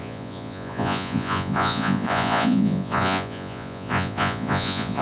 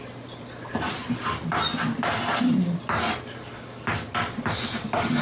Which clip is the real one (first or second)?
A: second